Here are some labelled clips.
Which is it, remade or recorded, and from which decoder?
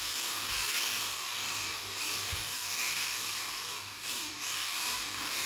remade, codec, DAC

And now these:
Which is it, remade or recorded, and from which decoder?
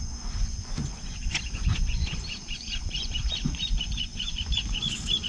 remade, vocoder, Vocos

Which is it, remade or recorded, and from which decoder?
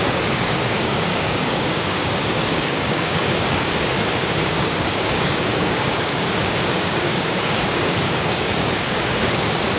remade, codec, DAC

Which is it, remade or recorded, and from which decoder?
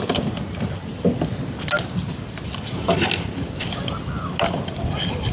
recorded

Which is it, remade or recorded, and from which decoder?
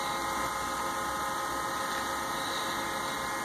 recorded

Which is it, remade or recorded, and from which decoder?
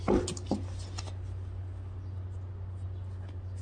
recorded